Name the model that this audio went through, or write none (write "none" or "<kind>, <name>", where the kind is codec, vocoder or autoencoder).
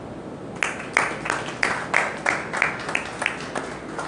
none